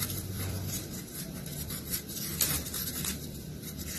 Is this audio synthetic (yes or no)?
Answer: yes